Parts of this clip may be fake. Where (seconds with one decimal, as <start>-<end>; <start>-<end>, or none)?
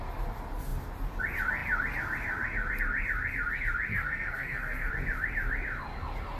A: 3.9-4.9